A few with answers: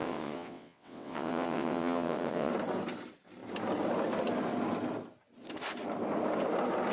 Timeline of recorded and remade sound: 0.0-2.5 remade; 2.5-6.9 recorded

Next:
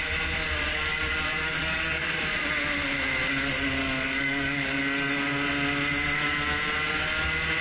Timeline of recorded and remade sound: 0.0-0.7 recorded; 0.7-2.1 remade; 2.1-3.8 recorded; 3.8-4.8 remade; 4.8-7.6 recorded

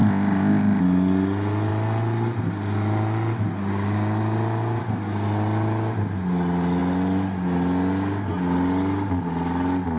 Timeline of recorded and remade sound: 0.0-0.8 remade; 0.8-10.0 recorded

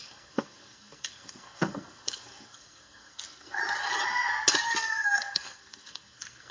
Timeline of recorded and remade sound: 0.0-3.6 remade; 3.6-4.7 recorded; 4.7-6.5 remade

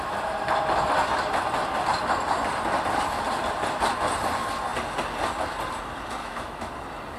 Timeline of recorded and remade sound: 0.0-6.2 recorded; 6.2-6.7 remade; 6.7-7.2 recorded